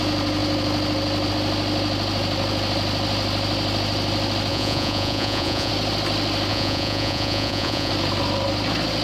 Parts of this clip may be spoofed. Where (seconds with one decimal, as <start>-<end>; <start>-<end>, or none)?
4.5-5.7; 6.5-7.9